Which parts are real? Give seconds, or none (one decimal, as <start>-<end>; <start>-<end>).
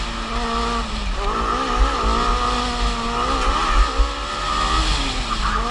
0.0-5.7